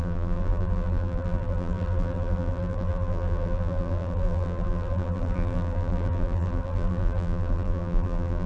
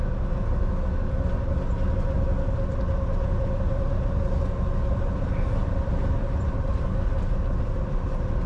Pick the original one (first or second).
second